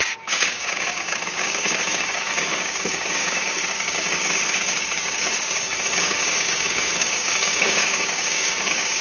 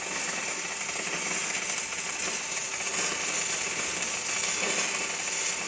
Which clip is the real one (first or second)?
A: second